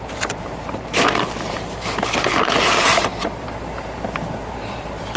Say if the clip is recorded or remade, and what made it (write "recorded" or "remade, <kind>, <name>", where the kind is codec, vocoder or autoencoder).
remade, vocoder, BigVGAN v2